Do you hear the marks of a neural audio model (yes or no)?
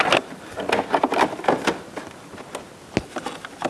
no